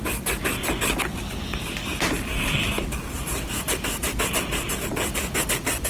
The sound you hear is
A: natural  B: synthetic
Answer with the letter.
A